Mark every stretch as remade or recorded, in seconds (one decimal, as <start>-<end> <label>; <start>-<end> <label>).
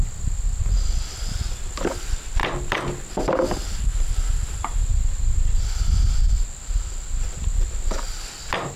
0.0-8.8 recorded